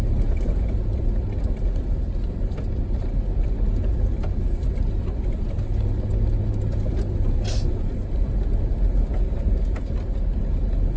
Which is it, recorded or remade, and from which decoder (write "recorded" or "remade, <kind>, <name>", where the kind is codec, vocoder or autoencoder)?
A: recorded